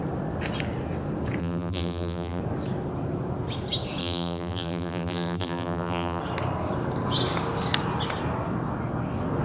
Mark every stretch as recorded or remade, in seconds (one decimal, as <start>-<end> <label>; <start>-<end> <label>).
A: 0.0-1.4 recorded; 1.4-2.4 remade; 2.4-4.0 recorded; 4.0-6.2 remade; 6.2-9.4 recorded